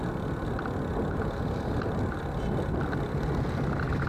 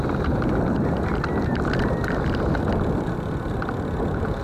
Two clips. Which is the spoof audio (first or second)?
second